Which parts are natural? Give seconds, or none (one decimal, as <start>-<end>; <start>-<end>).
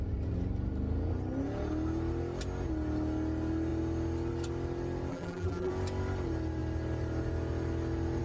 0.0-5.1; 5.7-8.2